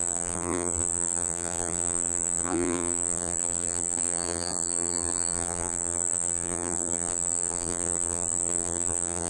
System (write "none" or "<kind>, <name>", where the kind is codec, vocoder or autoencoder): vocoder, BigVGAN v2